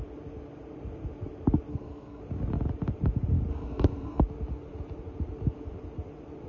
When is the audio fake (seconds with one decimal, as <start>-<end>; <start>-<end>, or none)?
1.7-2.2; 3.5-4.2